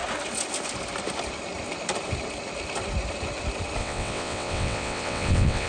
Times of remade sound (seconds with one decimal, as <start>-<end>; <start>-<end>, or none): 3.8-5.7